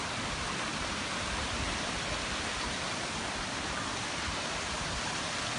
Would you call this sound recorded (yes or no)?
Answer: yes